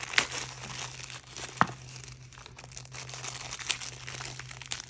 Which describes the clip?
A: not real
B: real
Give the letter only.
B